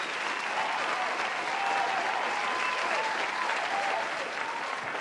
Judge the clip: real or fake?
real